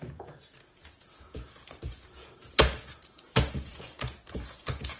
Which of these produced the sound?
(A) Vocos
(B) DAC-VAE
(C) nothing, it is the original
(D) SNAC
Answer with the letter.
A